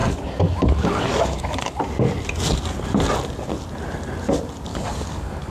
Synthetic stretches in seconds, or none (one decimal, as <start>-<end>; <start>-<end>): 0.0-1.8; 4.7-5.5